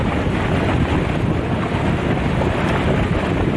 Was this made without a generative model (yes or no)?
yes